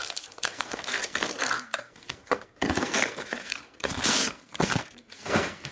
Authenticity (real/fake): fake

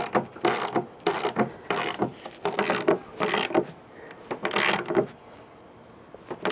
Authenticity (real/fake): real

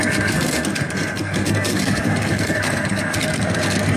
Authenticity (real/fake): fake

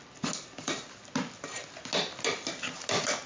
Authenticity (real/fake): real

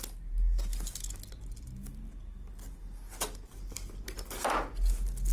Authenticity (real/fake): real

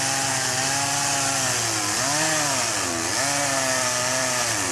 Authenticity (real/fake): real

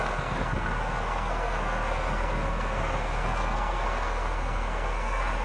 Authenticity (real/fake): fake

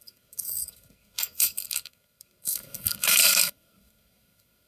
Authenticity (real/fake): fake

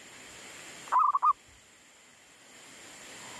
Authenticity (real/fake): real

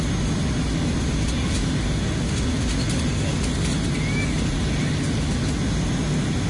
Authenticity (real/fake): real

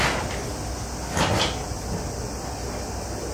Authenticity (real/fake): real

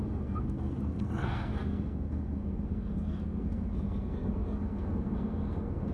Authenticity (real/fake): fake